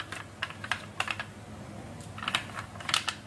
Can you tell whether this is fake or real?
real